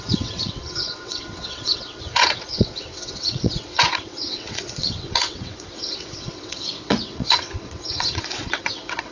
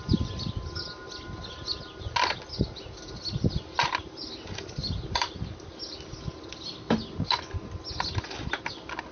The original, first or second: second